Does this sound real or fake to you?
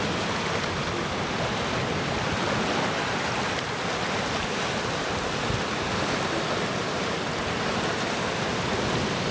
real